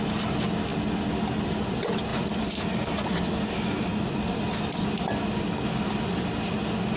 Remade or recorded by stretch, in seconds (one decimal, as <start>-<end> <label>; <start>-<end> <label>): 0.0-7.0 recorded